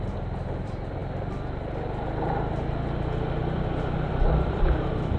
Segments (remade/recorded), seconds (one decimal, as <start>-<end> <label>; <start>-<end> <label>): 0.0-5.2 remade